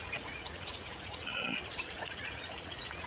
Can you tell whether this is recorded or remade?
remade